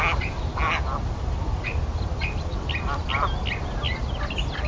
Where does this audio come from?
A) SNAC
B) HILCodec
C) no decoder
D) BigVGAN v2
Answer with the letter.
C